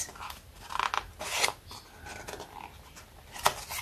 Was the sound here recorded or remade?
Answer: recorded